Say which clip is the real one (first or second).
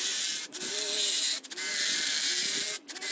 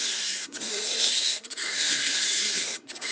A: first